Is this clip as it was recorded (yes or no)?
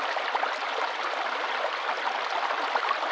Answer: yes